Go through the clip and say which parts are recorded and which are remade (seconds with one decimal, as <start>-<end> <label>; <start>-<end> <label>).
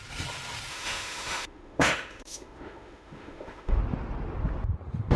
0.0-0.7 recorded; 0.7-3.8 remade; 3.8-5.2 recorded